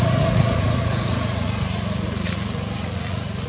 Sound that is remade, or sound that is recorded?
remade